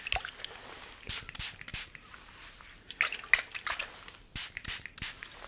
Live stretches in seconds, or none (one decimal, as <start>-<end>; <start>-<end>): 0.0-5.5

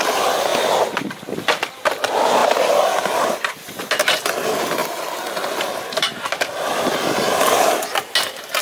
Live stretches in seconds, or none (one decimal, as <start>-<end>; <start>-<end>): 0.0-4.8; 7.8-8.6

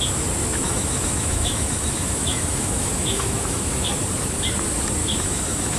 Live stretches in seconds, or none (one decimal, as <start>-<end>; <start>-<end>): 0.0-0.5; 3.9-5.0

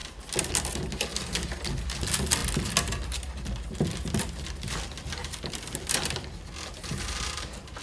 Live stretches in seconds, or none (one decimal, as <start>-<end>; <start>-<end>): 0.0-7.8